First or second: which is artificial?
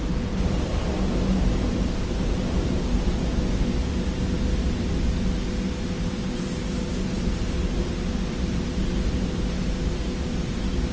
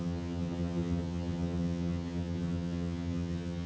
second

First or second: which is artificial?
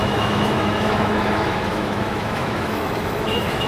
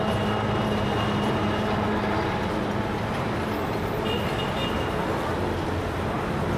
first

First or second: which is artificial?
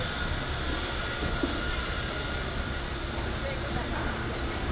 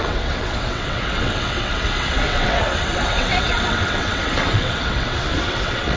second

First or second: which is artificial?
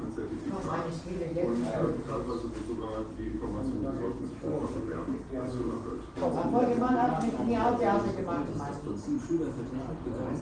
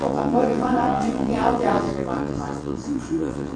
second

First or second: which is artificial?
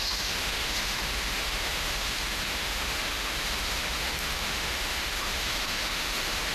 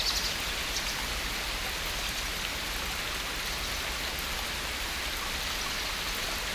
first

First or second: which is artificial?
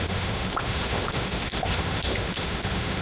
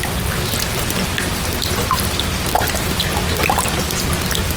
first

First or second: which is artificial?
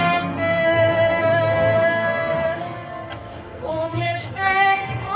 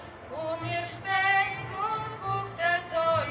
first